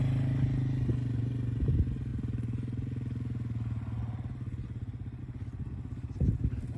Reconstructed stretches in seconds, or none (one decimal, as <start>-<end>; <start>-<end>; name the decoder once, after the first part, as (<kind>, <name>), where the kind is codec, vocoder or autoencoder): none

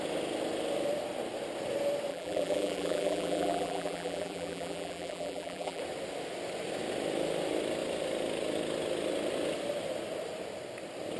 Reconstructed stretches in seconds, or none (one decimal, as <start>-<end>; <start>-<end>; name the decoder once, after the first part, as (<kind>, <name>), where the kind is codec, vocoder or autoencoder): 2.1-5.8 (vocoder, BigVGAN v2)

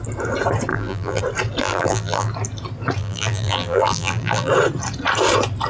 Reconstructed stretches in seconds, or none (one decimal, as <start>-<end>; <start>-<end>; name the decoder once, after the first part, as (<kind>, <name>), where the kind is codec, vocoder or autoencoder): 0.7-1.2 (vocoder, BigVGAN v2); 1.6-2.3; 3.0-4.5

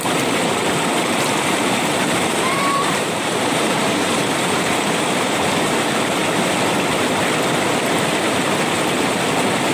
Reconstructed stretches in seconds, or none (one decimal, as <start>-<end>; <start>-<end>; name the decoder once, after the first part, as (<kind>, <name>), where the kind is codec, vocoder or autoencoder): 0.0-6.2 (vocoder, BigVGAN v2)

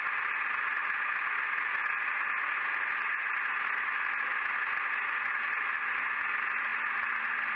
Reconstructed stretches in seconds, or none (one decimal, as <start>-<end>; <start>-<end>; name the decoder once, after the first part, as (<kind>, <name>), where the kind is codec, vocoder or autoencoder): none

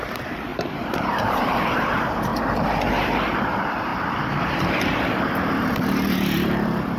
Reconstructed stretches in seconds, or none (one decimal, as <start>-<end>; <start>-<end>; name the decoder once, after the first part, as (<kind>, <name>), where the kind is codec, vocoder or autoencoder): 0.0-2.3 (vocoder, BigVGAN v2); 2.9-3.9; 4.5-7.0

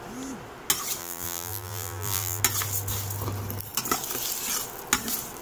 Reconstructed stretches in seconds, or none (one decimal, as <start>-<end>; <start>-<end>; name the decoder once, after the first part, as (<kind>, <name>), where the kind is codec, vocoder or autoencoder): 1.0-2.4 (vocoder, BigVGAN v2)

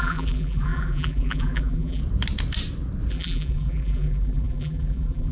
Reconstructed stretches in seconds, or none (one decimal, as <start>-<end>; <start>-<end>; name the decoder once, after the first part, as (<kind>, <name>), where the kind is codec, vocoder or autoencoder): 0.0-2.0 (vocoder, BigVGAN v2); 3.1-5.3